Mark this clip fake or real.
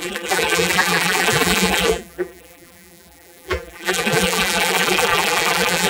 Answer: fake